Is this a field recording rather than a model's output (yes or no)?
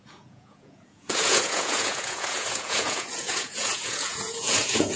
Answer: no